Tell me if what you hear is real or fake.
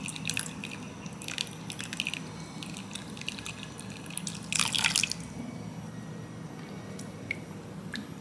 real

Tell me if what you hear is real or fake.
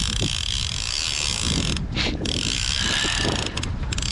real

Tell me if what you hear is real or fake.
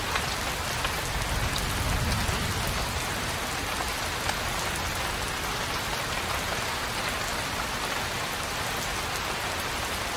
real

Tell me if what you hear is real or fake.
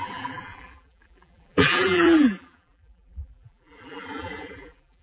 fake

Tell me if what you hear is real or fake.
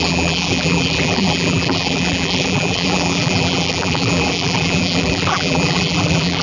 fake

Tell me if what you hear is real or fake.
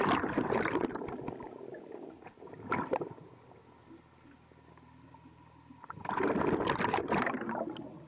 real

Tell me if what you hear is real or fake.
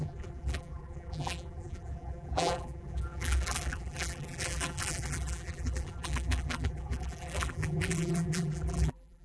fake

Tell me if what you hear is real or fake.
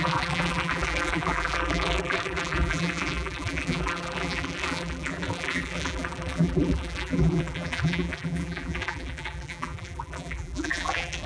fake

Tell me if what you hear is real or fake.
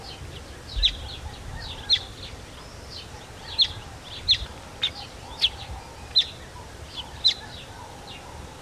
real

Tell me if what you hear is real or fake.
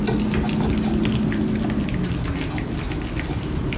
real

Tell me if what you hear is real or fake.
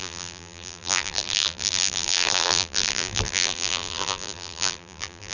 fake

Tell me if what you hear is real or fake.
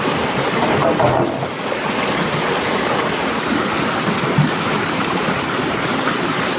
real